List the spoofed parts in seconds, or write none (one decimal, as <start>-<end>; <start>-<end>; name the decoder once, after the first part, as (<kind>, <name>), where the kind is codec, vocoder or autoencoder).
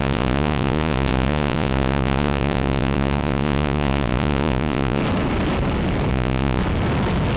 0.0-5.0 (vocoder, Vocos); 6.1-6.6